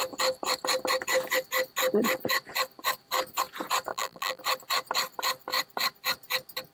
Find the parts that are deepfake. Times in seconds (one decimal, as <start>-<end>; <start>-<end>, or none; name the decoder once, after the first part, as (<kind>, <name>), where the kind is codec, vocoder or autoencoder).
3.9-4.4 (vocoder, BigVGAN v2)